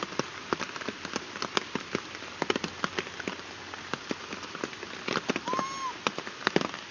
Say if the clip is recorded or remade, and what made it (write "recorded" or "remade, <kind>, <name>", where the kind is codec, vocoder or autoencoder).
recorded